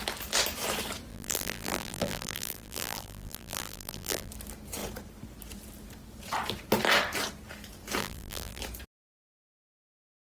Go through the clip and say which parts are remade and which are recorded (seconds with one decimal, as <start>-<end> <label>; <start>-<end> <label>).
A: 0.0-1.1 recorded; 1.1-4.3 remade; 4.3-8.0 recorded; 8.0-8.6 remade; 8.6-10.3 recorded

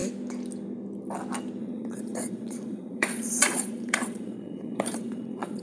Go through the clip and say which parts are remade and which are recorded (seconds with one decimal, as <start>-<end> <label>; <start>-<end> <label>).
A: 0.0-1.6 recorded; 1.6-5.6 remade

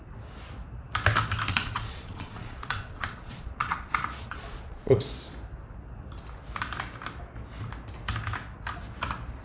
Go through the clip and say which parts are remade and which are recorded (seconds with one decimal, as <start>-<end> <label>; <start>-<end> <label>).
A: 0.0-1.5 recorded; 1.5-5.0 remade; 5.0-9.4 recorded